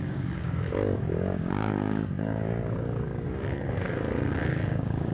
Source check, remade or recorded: remade